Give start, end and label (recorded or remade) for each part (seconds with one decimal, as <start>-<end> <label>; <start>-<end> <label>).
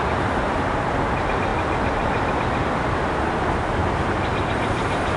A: 0.0-5.2 recorded